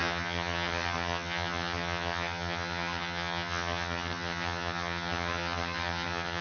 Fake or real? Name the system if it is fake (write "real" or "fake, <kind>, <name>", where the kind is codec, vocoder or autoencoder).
fake, vocoder, HiFi-GAN